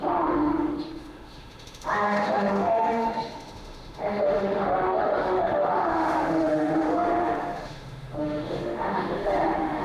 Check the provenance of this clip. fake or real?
fake